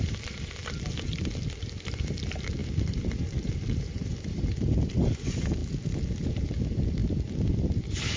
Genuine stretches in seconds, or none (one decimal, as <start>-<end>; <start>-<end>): 0.6-1.9; 5.6-6.2; 7.0-8.2